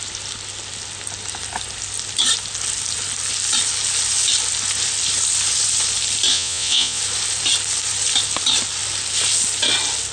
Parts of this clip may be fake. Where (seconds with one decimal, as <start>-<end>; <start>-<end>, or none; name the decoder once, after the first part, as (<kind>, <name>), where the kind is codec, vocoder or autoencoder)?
6.3-7.0 (vocoder, Vocos)